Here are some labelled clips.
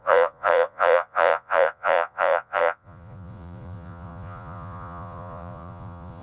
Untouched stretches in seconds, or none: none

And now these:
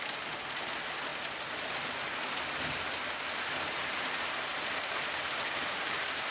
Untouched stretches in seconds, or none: 0.0-6.3

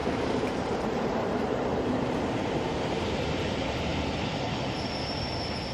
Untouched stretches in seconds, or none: 3.9-5.7

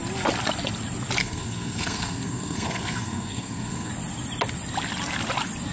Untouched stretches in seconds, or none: 0.0-1.2; 3.9-5.7

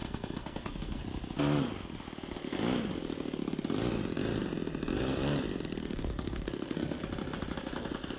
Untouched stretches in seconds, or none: 1.0-5.8; 7.0-8.2

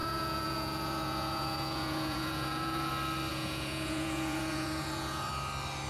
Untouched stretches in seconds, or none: 2.9-3.3; 5.3-5.9

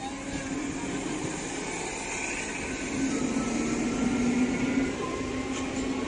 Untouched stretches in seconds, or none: 0.0-6.1

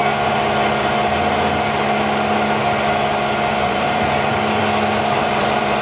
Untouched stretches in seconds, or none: 0.0-3.5; 4.6-5.1